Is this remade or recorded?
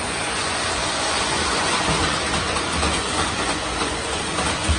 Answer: remade